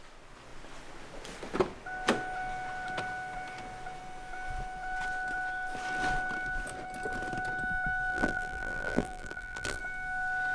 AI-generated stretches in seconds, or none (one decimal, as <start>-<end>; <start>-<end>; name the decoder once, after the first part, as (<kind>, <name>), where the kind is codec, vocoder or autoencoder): 8.1-9.8 (vocoder, BigVGAN v2)